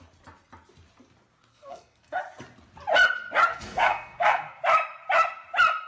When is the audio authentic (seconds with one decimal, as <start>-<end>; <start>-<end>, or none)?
0.0-1.5; 2.2-3.5; 4.6-5.9